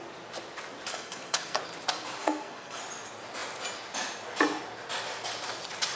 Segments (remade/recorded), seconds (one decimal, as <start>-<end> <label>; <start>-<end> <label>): 0.0-0.9 recorded; 0.9-1.6 remade; 1.6-2.2 recorded; 2.2-2.8 remade; 2.8-6.0 recorded

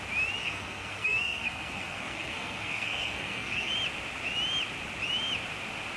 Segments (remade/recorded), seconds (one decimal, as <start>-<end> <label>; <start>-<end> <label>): 0.0-0.4 recorded; 0.4-3.7 remade; 3.7-6.0 recorded

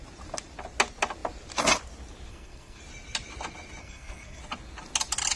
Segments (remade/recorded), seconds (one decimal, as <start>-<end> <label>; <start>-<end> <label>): 0.0-2.3 recorded; 2.3-2.8 remade; 2.8-3.8 recorded; 3.8-4.4 remade; 4.4-5.4 recorded

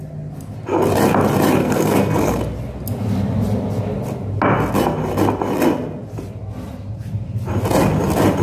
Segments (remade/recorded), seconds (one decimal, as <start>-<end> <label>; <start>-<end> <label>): 0.0-1.6 recorded; 1.6-2.4 remade; 2.4-8.4 recorded

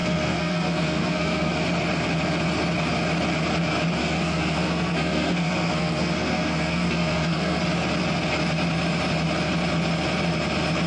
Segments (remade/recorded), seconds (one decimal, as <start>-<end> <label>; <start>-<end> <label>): 0.0-1.6 remade; 1.6-4.0 recorded; 4.0-7.6 remade; 7.6-10.9 recorded

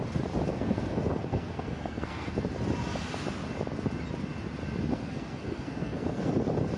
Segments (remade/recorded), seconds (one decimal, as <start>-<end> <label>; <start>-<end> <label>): 0.0-0.5 recorded; 0.5-2.3 remade; 2.3-4.9 recorded; 4.9-6.3 remade; 6.3-6.8 recorded

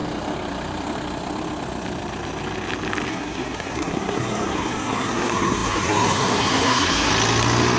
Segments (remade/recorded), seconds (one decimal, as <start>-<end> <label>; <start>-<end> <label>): 0.0-3.1 recorded; 3.1-7.1 remade; 7.1-7.8 recorded

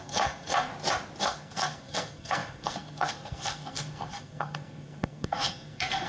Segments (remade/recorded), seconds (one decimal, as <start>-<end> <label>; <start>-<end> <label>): 0.0-0.7 remade; 0.7-1.2 recorded; 1.2-6.1 remade